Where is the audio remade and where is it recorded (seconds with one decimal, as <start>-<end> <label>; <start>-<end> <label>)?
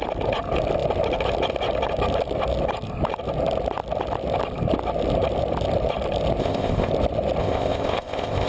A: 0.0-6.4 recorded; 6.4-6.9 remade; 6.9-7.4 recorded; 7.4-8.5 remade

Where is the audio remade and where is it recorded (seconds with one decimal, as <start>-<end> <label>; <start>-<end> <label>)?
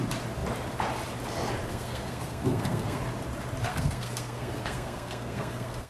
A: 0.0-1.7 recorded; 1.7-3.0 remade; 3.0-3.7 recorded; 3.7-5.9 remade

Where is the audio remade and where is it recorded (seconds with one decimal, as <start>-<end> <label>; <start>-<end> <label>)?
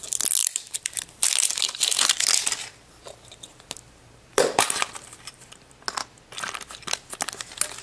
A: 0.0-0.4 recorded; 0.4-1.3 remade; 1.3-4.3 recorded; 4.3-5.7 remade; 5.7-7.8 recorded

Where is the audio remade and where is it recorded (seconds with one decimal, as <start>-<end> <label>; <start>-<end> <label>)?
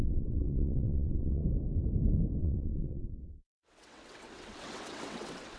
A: 0.0-1.4 remade; 1.4-2.4 recorded; 2.4-5.6 remade